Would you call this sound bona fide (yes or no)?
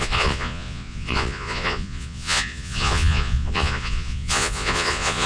no